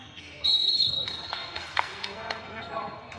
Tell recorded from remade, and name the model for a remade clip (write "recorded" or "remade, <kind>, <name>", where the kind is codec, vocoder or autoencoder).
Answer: remade, codec, SNAC